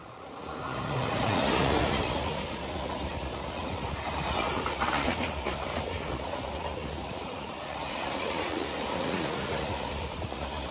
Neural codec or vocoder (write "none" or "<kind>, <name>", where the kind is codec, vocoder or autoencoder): vocoder, Vocos